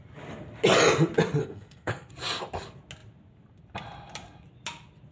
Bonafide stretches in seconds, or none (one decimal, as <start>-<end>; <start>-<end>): 0.0-1.4; 2.1-5.1